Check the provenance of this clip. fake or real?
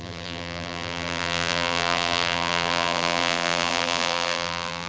fake